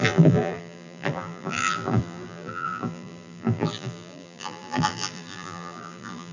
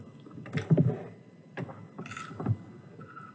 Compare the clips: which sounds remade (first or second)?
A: first